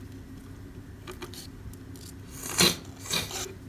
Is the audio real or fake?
real